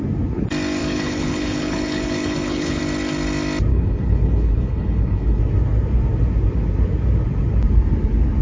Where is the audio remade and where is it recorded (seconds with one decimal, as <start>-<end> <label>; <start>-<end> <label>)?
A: 0.0-0.8 recorded; 0.8-2.8 remade; 2.8-3.7 recorded; 3.7-5.4 remade; 5.4-8.4 recorded